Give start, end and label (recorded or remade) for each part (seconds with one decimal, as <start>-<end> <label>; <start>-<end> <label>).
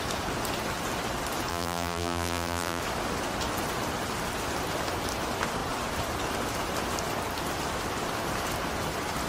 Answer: 0.0-1.5 recorded; 1.5-2.8 remade; 2.8-9.3 recorded